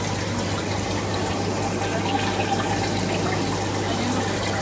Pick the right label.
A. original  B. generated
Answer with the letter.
A